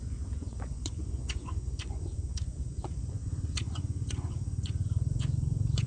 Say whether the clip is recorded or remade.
remade